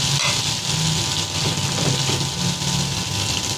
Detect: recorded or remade recorded